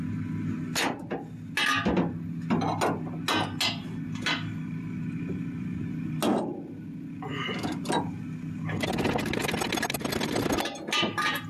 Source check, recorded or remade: recorded